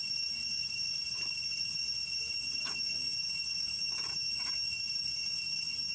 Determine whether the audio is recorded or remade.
recorded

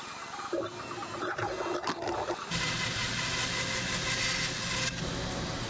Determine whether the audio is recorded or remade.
recorded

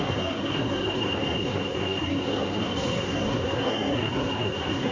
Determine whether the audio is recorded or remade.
remade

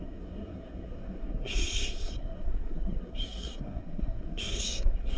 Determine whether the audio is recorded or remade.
remade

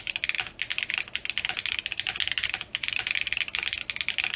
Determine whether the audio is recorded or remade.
recorded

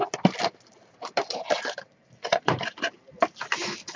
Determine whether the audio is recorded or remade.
recorded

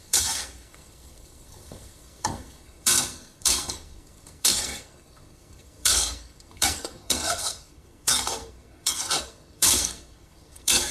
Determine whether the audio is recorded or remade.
remade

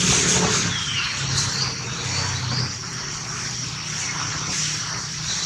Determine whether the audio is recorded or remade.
recorded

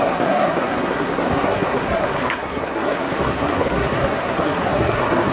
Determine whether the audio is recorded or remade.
remade